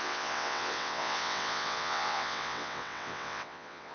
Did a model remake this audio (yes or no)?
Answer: yes